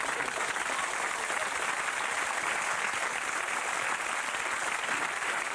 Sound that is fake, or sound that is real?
real